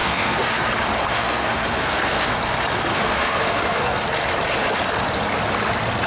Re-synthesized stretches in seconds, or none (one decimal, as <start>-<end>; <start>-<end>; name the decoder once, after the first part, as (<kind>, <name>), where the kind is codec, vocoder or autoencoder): 0.0-0.7 (codec, SNAC); 1.1-2.3; 2.9-4.0

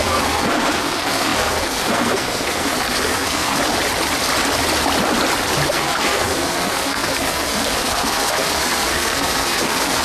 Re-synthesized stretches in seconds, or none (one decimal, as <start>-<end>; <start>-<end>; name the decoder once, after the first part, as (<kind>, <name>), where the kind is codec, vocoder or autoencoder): 0.0-3.6 (codec, SNAC); 5.7-10.0